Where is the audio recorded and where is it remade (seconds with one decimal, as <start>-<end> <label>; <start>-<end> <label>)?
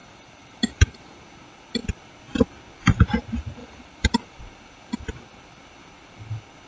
0.0-1.2 remade; 1.2-3.6 recorded; 3.6-4.4 remade; 4.4-6.7 recorded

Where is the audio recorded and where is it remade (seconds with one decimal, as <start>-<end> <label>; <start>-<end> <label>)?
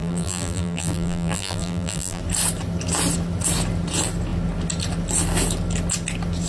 0.0-2.2 remade; 2.2-6.5 recorded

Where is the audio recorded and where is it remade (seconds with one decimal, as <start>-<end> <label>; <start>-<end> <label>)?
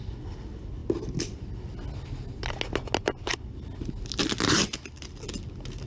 0.0-5.9 recorded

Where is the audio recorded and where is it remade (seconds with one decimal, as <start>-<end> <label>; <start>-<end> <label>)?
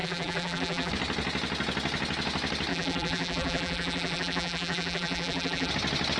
0.0-0.9 remade; 0.9-2.7 recorded; 2.7-5.7 remade; 5.7-6.2 recorded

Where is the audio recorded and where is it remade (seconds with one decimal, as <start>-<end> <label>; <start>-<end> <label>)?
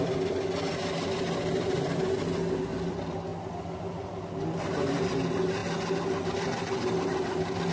0.0-7.7 recorded